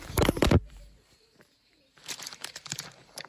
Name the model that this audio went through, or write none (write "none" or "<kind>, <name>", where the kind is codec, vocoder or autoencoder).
vocoder, BigVGAN v2